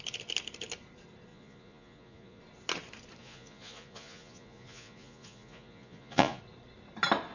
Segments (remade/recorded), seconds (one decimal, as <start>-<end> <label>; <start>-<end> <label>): 0.0-1.3 recorded; 1.3-2.4 remade; 2.4-3.2 recorded; 3.2-6.4 remade; 6.4-7.3 recorded